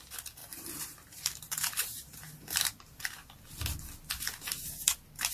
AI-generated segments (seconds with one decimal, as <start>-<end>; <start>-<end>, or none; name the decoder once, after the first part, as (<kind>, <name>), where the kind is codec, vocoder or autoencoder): 0.4-3.6 (vocoder, BigVGAN v2)